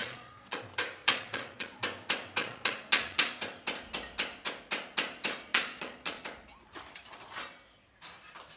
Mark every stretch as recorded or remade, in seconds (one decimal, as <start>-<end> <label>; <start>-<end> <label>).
0.0-0.6 remade; 0.6-1.0 recorded; 1.0-1.8 remade; 1.8-2.4 recorded; 2.4-3.3 remade; 3.3-5.5 recorded; 5.5-6.2 remade; 6.2-8.6 recorded